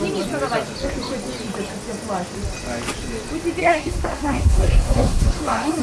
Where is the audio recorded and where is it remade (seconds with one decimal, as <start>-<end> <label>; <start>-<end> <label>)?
0.0-3.6 recorded; 3.6-5.8 remade